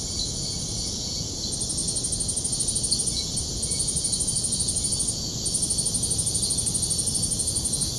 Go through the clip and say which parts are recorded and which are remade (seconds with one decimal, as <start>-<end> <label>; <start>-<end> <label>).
0.0-8.0 recorded